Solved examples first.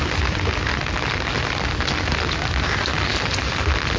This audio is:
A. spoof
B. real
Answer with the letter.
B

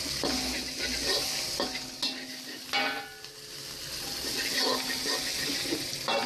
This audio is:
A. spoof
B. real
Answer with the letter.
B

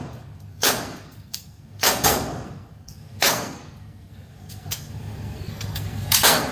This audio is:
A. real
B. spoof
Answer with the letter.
B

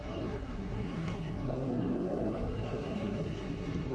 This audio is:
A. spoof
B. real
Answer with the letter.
A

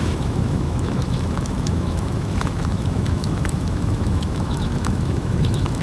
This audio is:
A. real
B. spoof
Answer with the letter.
B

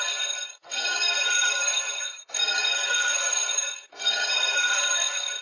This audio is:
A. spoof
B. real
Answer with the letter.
A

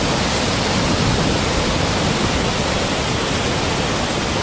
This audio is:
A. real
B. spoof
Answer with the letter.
A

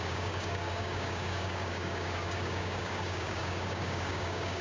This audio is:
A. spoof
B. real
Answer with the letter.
A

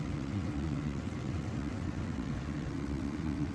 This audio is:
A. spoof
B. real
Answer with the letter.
A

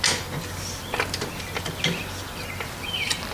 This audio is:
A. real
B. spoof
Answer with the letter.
A